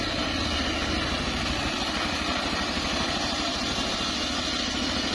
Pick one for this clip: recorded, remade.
recorded